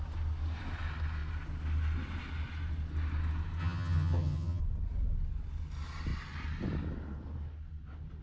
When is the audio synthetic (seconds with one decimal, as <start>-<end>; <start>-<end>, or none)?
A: 3.6-4.6